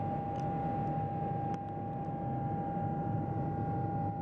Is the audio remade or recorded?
recorded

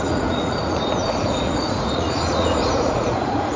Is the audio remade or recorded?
remade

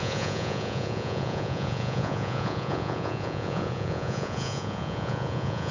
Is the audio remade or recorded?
remade